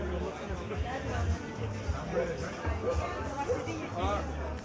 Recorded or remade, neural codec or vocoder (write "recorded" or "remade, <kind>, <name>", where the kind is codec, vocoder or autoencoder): recorded